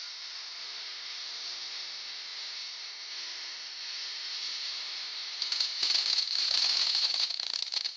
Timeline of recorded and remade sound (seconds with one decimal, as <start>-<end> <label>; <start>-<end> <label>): 0.0-8.0 recorded